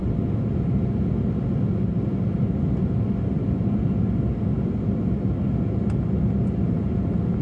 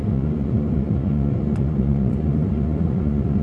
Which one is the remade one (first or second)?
second